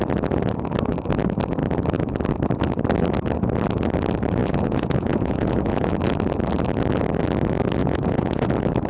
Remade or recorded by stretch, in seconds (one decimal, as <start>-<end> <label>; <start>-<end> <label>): 0.0-4.4 recorded; 4.4-5.9 remade; 5.9-7.8 recorded; 7.8-8.5 remade; 8.5-8.9 recorded